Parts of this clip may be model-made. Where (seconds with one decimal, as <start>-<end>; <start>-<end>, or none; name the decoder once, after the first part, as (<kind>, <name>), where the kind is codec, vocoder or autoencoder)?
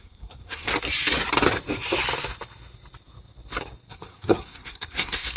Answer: 0.0-0.7 (codec, SNAC); 3.9-5.4